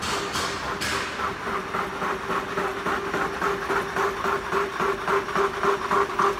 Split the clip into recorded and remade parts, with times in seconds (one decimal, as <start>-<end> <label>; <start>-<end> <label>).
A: 0.0-6.4 recorded